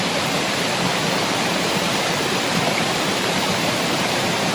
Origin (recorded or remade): remade